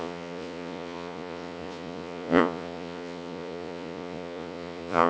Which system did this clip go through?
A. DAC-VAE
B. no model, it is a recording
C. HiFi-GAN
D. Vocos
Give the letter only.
D